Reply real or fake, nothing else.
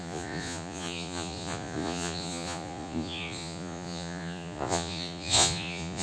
fake